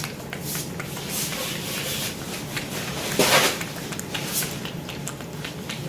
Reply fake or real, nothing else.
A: real